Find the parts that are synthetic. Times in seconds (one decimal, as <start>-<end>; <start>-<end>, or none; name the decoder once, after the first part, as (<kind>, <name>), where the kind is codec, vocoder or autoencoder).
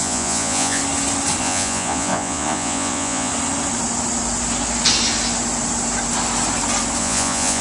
0.0-0.8 (vocoder, Vocos); 1.4-3.3; 7.0-7.6